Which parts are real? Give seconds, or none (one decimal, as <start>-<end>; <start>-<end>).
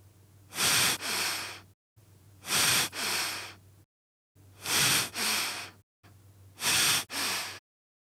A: 0.0-2.0; 2.8-8.1